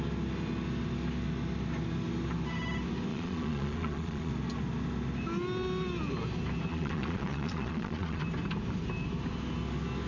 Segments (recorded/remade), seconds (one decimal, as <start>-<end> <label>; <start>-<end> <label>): 0.0-3.1 recorded; 3.1-4.3 remade; 4.3-6.7 recorded; 6.7-8.2 remade; 8.2-10.1 recorded